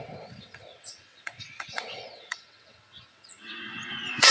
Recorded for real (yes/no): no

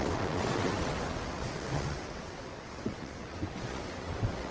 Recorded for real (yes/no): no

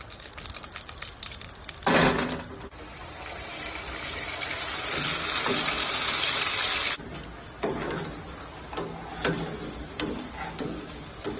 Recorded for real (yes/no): yes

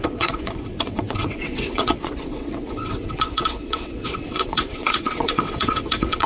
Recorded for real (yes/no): no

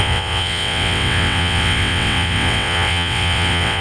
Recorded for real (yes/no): no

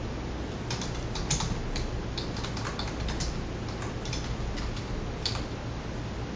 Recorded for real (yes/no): yes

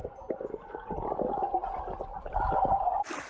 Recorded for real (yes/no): yes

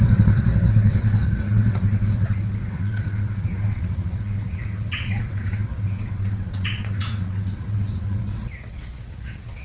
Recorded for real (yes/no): no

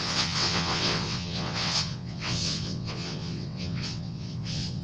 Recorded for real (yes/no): no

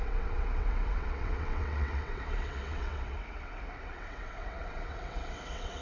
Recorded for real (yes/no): no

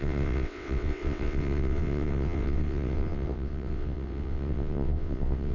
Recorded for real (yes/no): no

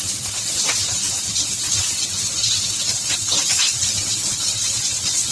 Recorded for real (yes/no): no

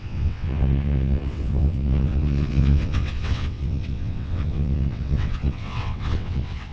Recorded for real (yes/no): no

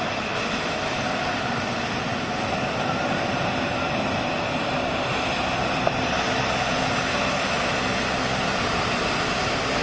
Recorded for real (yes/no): yes